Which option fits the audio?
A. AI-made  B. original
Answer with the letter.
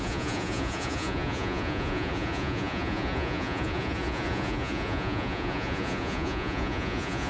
A